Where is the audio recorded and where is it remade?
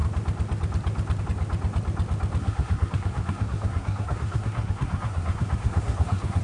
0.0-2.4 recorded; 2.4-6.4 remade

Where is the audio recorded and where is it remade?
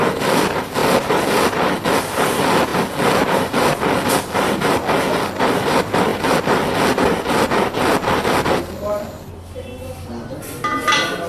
0.0-11.3 recorded